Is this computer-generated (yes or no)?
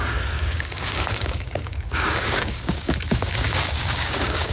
yes